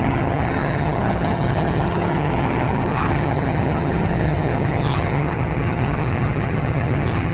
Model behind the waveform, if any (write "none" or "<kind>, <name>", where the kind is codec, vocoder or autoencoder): vocoder, HiFi-GAN